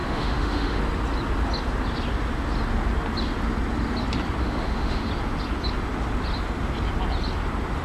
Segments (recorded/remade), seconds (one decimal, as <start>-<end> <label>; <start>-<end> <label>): 0.0-0.8 remade; 0.8-4.4 recorded; 4.4-5.1 remade; 5.1-7.8 recorded